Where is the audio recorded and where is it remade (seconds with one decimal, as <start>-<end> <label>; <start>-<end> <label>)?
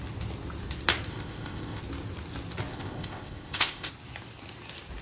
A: 0.0-1.1 recorded; 1.1-1.8 remade; 1.8-2.7 recorded; 2.7-3.9 remade; 3.9-5.0 recorded